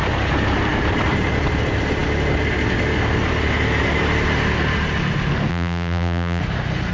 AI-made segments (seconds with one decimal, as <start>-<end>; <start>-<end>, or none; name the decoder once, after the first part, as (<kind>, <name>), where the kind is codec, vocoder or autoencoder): 5.5-6.4 (vocoder, BigVGAN v2)